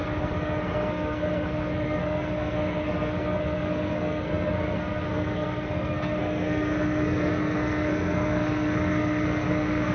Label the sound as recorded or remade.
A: remade